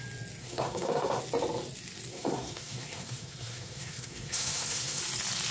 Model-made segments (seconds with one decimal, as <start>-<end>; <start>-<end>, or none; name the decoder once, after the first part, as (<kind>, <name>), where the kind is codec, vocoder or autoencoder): 0.4-1.2 (codec, SNAC); 2.1-5.0